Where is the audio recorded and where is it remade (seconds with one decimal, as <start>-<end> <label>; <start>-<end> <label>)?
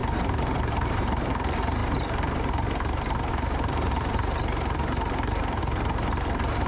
0.0-6.7 remade